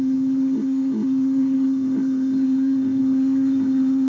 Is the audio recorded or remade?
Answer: remade